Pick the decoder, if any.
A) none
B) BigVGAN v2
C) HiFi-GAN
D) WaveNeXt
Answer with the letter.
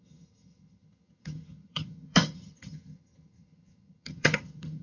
C